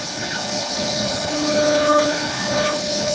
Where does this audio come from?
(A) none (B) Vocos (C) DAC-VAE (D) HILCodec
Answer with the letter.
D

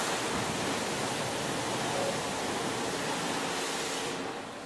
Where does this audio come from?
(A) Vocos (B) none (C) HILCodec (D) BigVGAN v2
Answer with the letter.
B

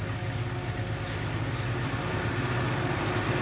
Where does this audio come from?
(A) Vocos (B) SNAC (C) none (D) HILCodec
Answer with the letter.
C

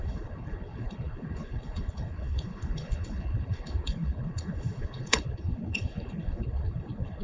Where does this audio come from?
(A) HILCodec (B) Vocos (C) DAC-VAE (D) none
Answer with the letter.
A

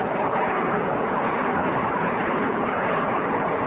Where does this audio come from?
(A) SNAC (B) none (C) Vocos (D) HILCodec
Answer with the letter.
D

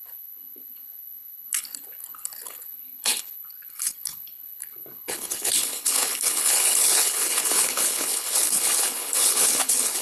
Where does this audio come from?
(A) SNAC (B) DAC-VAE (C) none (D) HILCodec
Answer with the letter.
D